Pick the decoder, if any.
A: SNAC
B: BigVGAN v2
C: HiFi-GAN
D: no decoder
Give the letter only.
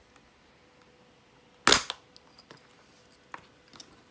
D